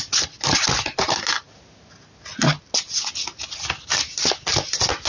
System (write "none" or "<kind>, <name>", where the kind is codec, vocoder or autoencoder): none